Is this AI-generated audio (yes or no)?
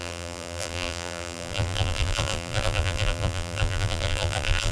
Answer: yes